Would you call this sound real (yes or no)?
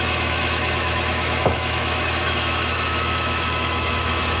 no